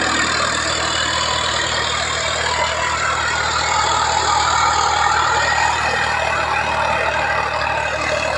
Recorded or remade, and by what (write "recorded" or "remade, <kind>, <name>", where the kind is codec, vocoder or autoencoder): recorded